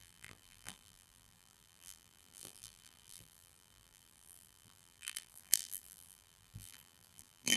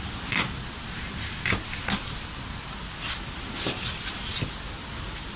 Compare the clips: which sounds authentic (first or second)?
second